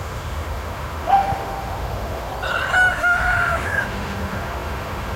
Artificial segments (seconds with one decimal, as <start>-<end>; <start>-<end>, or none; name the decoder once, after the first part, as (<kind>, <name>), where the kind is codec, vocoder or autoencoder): 0.0-2.3 (autoencoder, DAC-VAE); 2.9-5.2